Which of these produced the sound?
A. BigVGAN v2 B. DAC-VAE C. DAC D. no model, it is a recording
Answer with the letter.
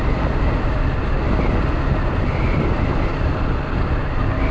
D